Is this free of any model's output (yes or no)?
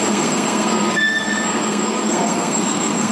no